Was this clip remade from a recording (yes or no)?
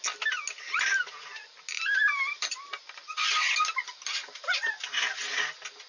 no